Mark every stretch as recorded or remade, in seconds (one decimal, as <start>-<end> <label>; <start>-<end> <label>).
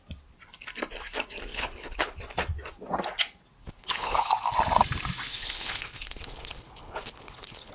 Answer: 0.0-1.5 recorded; 1.5-2.2 remade; 2.2-3.6 recorded; 3.6-4.3 remade; 4.3-5.3 recorded; 5.3-7.7 remade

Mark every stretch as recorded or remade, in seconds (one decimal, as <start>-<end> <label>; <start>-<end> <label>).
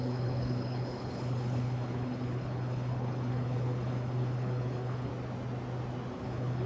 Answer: 0.0-5.1 remade; 5.1-6.2 recorded; 6.2-6.7 remade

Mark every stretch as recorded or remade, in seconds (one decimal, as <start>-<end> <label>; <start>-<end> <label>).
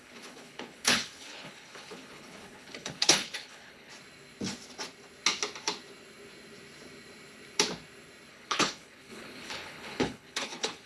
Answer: 0.0-3.9 remade; 3.9-8.3 recorded; 8.3-10.9 remade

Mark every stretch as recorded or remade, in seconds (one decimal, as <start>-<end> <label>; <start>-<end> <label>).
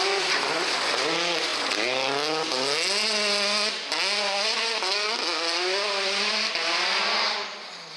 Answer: 0.0-8.0 recorded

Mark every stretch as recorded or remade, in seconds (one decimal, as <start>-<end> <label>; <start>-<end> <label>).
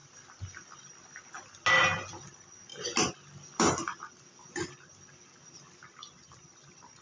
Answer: 0.0-7.0 recorded